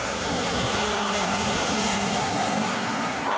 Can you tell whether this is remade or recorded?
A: remade